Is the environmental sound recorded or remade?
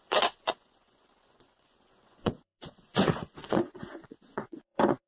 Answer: remade